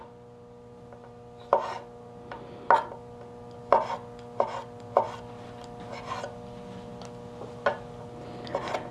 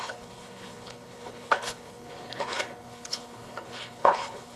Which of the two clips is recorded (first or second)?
first